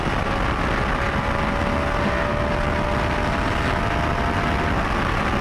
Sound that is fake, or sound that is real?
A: real